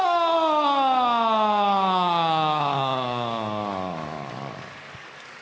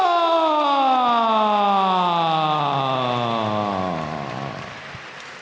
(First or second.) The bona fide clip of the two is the second